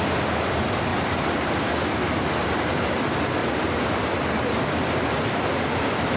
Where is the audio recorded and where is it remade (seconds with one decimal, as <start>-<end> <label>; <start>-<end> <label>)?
0.0-0.9 recorded; 0.9-1.5 remade; 1.5-2.4 recorded; 2.4-3.0 remade; 3.0-3.4 recorded; 3.4-4.1 remade; 4.1-6.2 recorded